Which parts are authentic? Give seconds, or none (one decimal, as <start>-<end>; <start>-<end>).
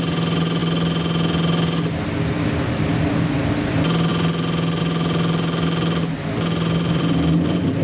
0.0-7.8